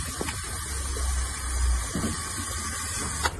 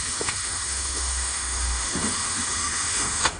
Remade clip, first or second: second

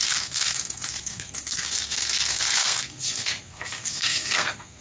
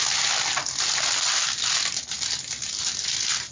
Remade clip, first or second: first